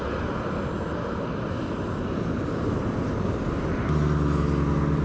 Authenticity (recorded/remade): recorded